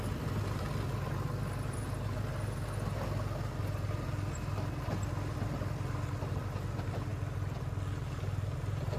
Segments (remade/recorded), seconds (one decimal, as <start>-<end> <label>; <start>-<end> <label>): 0.0-9.0 recorded